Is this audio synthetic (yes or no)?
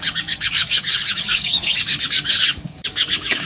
yes